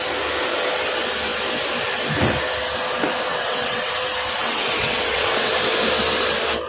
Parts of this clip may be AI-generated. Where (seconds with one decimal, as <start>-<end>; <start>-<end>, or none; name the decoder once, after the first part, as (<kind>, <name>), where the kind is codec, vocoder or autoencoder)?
3.3-3.9 (vocoder, WaveNeXt); 4.4-5.5